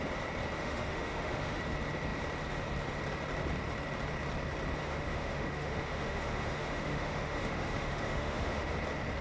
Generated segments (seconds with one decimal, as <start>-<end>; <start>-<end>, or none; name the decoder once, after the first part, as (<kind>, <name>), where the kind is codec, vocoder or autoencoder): 0.6-1.6 (autoencoder, DAC-VAE); 4.8-8.7